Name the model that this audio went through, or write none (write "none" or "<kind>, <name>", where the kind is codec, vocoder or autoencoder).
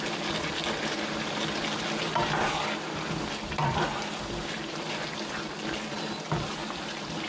none